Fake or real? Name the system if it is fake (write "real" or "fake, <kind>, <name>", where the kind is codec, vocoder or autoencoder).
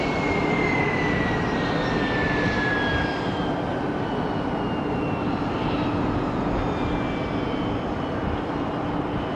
real